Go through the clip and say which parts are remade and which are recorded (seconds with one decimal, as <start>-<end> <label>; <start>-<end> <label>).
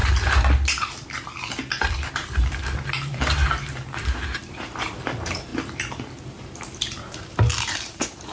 0.0-2.1 recorded; 2.1-3.4 remade; 3.4-4.0 recorded; 4.0-5.5 remade; 5.5-6.2 recorded; 6.2-8.3 remade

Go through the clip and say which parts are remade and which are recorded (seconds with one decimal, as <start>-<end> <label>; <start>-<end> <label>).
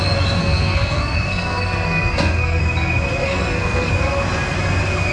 0.0-0.4 recorded; 0.4-2.6 remade; 2.6-3.2 recorded; 3.2-3.9 remade; 3.9-5.1 recorded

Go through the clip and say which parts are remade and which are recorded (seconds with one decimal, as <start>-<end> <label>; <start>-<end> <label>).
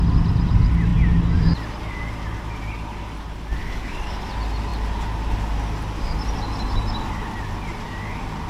0.0-3.6 recorded; 3.6-4.3 remade; 4.3-8.5 recorded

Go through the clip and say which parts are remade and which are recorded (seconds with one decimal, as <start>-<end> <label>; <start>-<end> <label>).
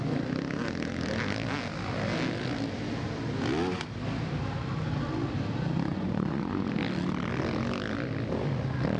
0.0-5.9 recorded; 5.9-6.7 remade; 6.7-9.0 recorded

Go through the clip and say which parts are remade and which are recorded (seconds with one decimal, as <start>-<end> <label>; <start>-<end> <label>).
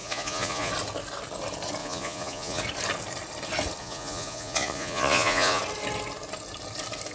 0.0-0.7 remade; 0.7-1.8 recorded; 1.8-2.6 remade; 2.6-3.8 recorded; 3.8-5.6 remade; 5.6-7.1 recorded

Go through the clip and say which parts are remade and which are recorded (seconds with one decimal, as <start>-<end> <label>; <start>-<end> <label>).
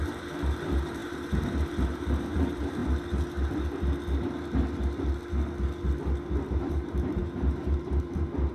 0.0-2.8 remade; 2.8-6.5 recorded; 6.5-8.5 remade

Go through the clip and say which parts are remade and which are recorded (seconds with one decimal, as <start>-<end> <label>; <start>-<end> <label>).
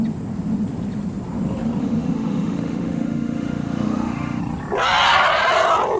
0.0-1.8 recorded; 1.8-4.4 remade; 4.4-6.0 recorded